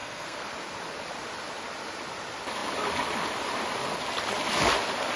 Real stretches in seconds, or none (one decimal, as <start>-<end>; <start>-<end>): 0.5-5.2